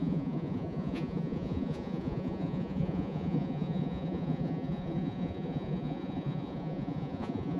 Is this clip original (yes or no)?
no